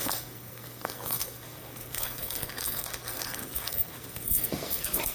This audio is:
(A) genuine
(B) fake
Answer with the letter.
B